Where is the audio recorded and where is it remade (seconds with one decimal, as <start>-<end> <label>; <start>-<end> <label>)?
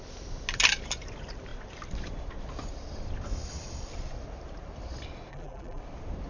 0.0-5.3 recorded; 5.3-5.8 remade; 5.8-6.3 recorded